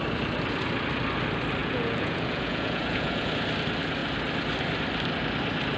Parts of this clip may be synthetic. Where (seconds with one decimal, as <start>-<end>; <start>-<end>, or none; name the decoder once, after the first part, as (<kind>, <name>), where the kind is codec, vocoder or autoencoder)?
1.6-3.3 (vocoder, Vocos)

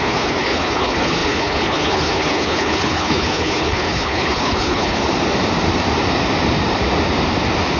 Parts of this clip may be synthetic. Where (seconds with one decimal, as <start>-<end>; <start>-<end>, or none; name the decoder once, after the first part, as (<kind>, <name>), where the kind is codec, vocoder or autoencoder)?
0.0-5.0 (codec, HILCodec)